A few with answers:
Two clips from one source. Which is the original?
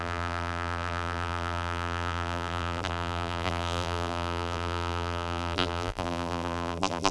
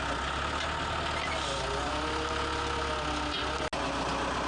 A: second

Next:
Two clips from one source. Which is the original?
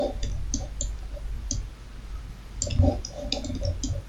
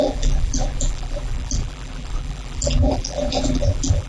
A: first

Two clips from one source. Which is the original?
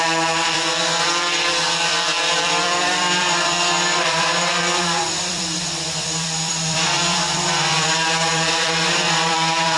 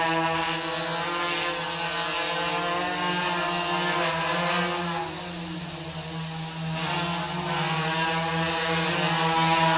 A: second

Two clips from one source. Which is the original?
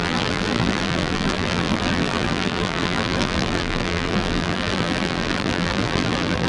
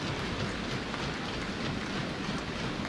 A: second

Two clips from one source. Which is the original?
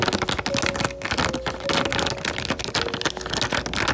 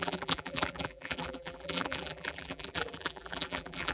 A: first